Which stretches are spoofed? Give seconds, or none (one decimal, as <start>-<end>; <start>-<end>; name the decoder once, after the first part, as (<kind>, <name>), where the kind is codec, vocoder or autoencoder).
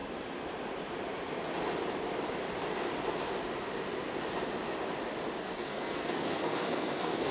5.4-7.3 (codec, SNAC)